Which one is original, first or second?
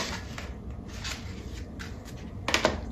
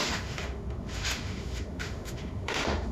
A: first